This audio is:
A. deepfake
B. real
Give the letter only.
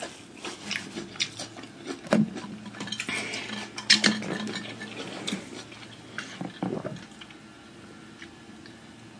B